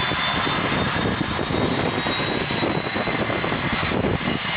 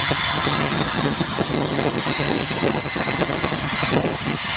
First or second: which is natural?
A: first